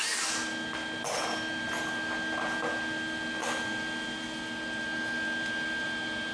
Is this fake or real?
real